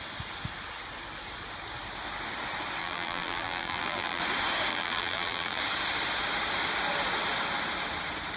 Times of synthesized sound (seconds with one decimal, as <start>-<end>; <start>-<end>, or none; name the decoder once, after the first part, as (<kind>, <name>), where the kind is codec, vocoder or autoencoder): 2.8-4.2 (vocoder, BigVGAN v2); 4.7-5.6